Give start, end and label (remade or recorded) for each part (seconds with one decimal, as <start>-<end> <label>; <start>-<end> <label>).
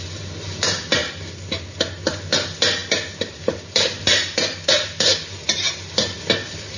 0.0-6.8 recorded